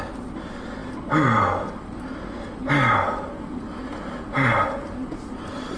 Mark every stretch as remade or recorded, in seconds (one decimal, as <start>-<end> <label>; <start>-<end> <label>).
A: 0.0-5.8 recorded